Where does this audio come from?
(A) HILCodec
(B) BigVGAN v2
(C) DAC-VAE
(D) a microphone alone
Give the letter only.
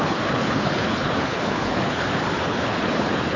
A